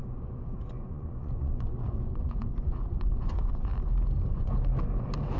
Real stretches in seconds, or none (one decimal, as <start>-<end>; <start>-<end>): 3.7-4.3; 4.7-5.4